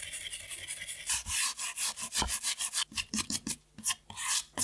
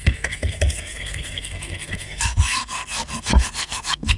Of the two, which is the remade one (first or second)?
second